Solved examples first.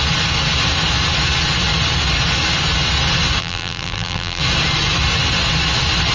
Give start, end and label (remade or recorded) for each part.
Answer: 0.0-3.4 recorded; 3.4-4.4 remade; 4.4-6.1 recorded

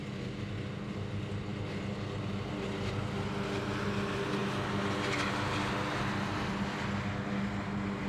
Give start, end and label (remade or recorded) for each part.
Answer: 0.0-8.1 recorded

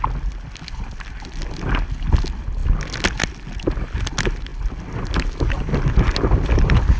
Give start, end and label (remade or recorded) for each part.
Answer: 0.0-7.0 recorded

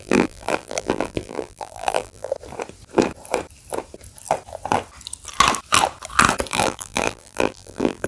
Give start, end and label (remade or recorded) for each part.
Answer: 0.0-2.3 remade; 2.3-6.5 recorded; 6.5-8.1 remade